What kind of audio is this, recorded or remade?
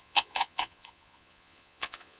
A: remade